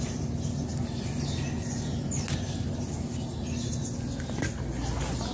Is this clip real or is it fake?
real